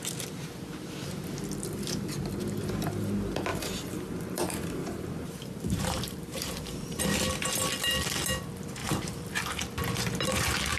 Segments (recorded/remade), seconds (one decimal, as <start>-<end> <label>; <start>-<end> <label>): 0.0-3.5 recorded; 3.5-7.0 remade; 7.0-8.8 recorded; 8.8-9.5 remade; 9.5-10.8 recorded